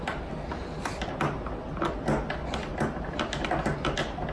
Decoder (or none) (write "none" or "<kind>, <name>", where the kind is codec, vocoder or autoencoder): none